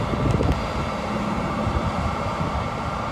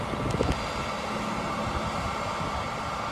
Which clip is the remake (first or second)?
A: first